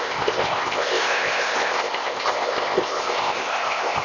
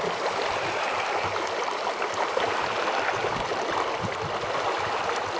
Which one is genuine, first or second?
second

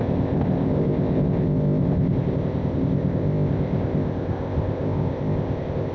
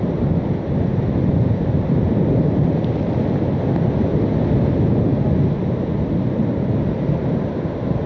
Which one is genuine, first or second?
second